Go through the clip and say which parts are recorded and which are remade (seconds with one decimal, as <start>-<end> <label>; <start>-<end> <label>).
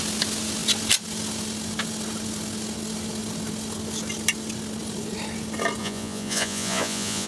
0.0-5.8 recorded; 5.8-7.3 remade